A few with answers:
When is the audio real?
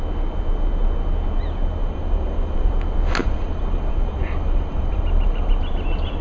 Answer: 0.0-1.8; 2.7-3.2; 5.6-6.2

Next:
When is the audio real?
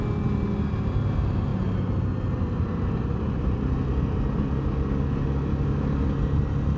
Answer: 0.0-6.8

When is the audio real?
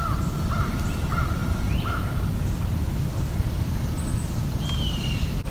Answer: 0.0-1.4; 2.1-5.5